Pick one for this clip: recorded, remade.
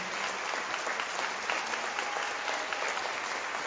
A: recorded